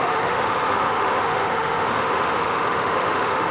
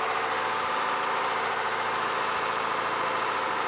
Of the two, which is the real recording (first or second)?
second